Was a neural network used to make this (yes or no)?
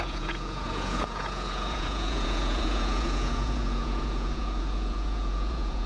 yes